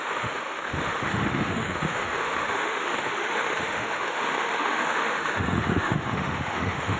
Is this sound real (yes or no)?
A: no